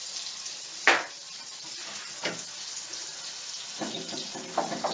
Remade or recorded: recorded